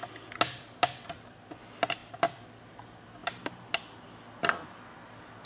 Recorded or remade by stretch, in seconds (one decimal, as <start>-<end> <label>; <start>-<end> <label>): 0.0-5.5 recorded